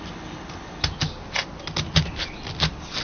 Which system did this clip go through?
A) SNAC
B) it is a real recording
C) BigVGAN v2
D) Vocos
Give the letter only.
B